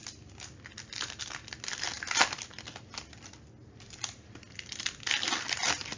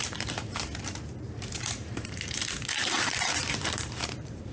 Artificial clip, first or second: second